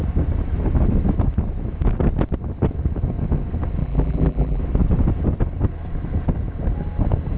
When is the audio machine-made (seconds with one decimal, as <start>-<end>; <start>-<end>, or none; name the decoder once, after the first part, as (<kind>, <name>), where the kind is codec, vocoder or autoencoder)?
3.8-4.6 (vocoder, BigVGAN v2)